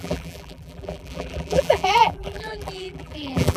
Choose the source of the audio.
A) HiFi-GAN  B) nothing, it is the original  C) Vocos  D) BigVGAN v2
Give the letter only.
D